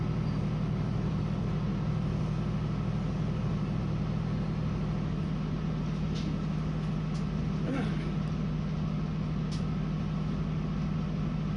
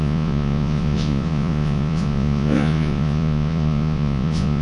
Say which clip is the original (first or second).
first